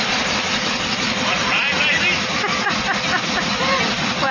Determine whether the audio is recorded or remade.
recorded